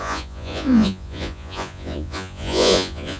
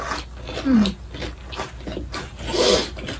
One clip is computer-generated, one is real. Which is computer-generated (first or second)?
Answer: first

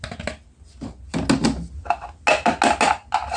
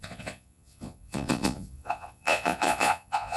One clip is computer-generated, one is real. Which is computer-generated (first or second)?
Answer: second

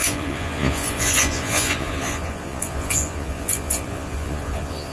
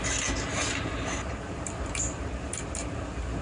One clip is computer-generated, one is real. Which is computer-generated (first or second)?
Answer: first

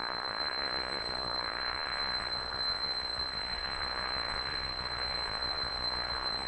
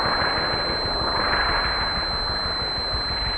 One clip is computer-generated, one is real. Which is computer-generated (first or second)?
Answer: first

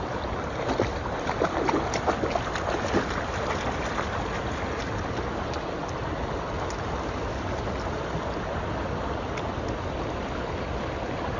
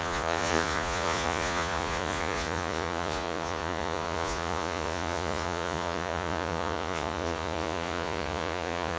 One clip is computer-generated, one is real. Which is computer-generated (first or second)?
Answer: second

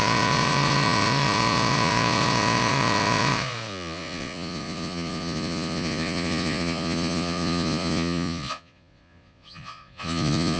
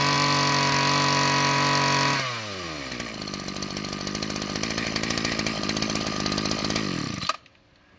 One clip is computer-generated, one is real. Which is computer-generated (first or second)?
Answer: first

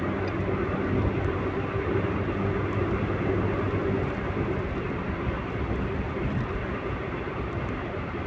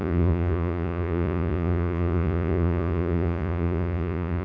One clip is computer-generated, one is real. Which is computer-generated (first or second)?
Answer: second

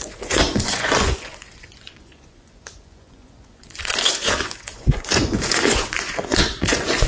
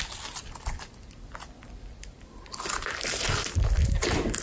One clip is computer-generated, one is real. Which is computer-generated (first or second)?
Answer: first